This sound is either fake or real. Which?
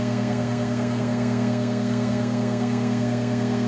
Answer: fake